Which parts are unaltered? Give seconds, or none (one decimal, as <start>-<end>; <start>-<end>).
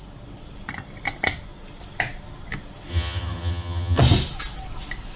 0.0-2.9; 4.0-5.2